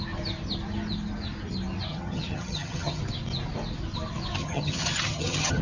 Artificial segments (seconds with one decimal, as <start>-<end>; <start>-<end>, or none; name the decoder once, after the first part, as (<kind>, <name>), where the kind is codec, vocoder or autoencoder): 1.9-3.0 (vocoder, HiFi-GAN); 4.4-5.6